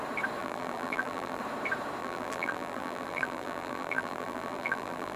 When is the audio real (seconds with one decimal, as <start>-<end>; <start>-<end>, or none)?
0.0-0.4; 1.4-2.0